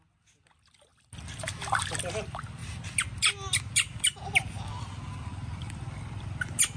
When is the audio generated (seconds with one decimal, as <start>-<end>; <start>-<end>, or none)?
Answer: 5.3-6.3